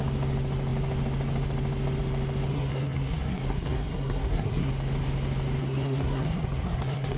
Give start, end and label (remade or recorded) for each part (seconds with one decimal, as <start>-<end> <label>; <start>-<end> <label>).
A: 0.0-2.5 recorded; 2.5-4.7 remade; 4.7-5.6 recorded; 5.6-7.2 remade